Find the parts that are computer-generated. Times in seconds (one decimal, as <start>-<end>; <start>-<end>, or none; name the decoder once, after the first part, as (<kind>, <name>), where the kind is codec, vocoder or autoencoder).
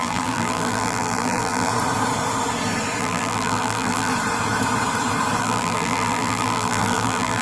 0.0-1.7 (vocoder, BigVGAN v2); 3.0-4.1; 5.4-7.4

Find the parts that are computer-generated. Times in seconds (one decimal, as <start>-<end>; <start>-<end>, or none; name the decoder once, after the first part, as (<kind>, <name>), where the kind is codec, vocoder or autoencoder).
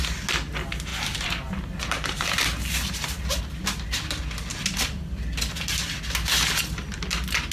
0.9-3.4 (vocoder, BigVGAN v2)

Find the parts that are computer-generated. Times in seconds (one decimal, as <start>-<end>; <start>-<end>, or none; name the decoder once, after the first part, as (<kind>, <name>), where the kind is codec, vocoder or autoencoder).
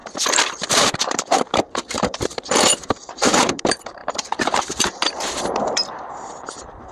0.7-6.9 (vocoder, BigVGAN v2)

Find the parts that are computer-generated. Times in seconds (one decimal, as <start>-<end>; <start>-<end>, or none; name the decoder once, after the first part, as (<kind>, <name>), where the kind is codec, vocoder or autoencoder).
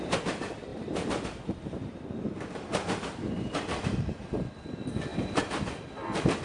0.7-4.5 (vocoder, BigVGAN v2); 5.1-6.4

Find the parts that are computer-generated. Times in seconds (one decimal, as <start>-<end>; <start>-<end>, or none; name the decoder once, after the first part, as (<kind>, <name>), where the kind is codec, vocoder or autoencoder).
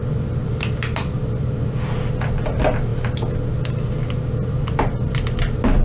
none